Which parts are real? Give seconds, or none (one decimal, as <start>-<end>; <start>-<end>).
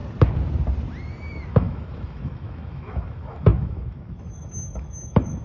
0.0-1.5